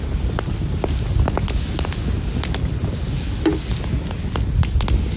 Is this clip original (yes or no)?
yes